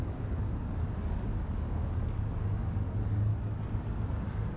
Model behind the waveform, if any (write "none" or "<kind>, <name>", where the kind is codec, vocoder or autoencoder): codec, DAC